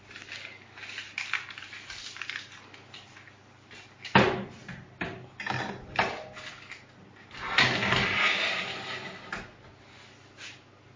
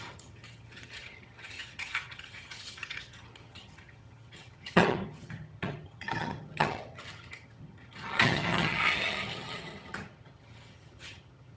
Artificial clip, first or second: second